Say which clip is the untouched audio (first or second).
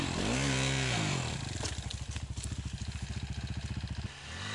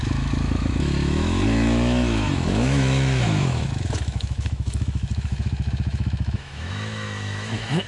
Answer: first